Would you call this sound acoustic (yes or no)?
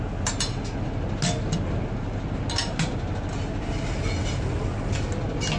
yes